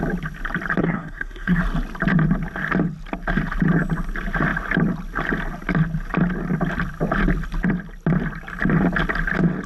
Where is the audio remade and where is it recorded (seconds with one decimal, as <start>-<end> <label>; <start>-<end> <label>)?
0.0-0.8 recorded; 0.8-1.6 remade; 1.6-9.7 recorded